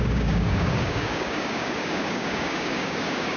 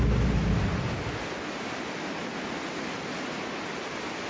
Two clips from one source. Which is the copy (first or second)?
first